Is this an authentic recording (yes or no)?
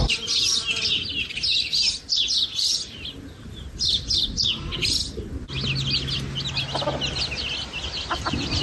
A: yes